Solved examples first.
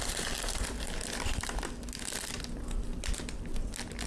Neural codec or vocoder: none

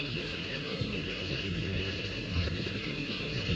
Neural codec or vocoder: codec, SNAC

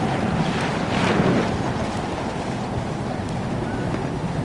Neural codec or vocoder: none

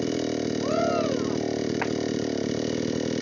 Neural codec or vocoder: none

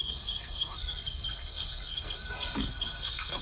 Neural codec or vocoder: codec, SNAC